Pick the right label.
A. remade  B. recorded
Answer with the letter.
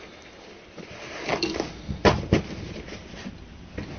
A